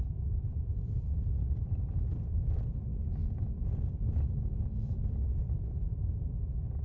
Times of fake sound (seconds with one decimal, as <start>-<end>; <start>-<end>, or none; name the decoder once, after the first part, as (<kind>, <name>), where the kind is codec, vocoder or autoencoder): 0.5-2.7 (vocoder, BigVGAN v2); 3.2-5.4